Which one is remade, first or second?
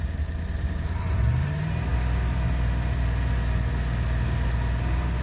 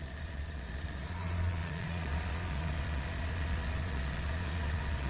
second